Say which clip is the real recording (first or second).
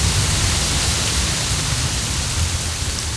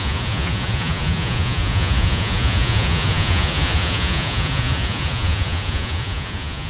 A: first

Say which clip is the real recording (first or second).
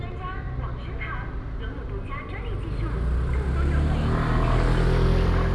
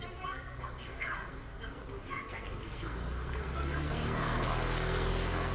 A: first